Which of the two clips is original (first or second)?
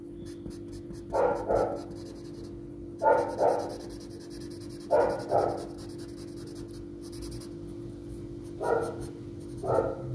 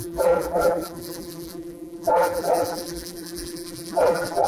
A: first